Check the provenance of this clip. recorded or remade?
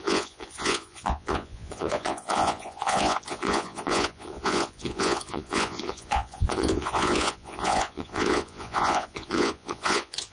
remade